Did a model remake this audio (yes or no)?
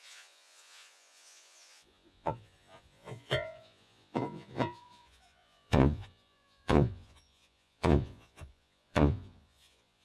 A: yes